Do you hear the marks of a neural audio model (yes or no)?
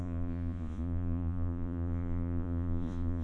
yes